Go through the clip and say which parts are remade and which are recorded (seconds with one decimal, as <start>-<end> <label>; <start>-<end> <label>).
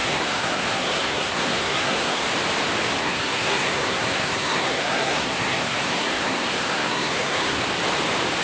0.0-2.2 remade; 2.2-3.0 recorded; 3.0-7.6 remade; 7.6-8.4 recorded